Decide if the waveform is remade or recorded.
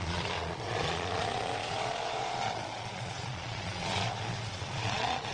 remade